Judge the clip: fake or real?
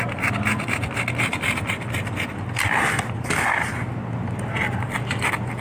real